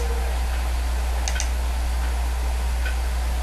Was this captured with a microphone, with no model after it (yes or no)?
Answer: yes